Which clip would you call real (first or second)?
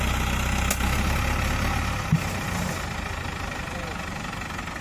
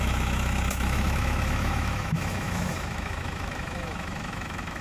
first